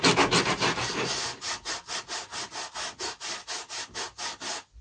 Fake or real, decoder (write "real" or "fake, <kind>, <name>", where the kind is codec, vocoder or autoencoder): real